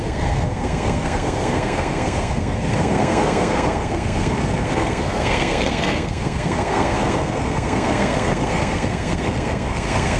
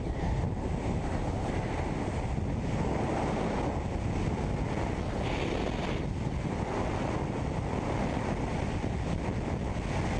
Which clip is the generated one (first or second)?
first